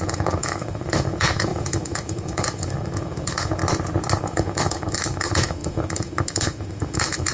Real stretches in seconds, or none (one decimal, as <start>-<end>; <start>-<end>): 3.6-4.2